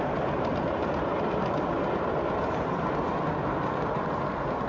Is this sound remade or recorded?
recorded